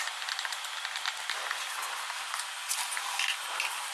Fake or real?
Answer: real